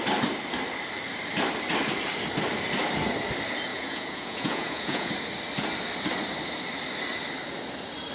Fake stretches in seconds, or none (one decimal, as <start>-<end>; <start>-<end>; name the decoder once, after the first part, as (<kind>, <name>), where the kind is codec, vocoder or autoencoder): 3.7-5.1 (vocoder, Vocos)